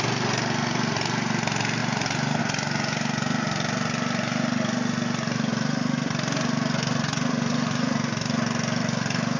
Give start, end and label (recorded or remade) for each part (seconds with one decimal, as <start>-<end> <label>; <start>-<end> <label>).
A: 0.0-9.4 recorded